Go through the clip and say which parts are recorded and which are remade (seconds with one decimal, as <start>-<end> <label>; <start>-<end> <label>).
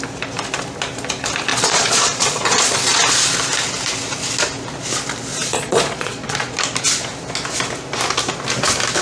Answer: 0.0-1.5 recorded; 1.5-3.0 remade; 3.0-5.3 recorded; 5.3-6.5 remade; 6.5-9.0 recorded